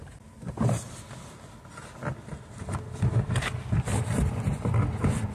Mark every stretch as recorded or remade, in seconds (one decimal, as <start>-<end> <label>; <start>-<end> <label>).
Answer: 0.0-5.3 recorded